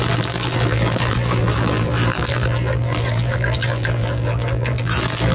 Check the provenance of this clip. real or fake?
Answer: fake